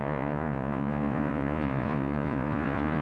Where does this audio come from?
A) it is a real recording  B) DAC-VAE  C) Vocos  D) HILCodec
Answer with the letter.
C